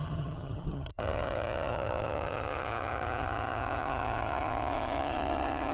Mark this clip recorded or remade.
remade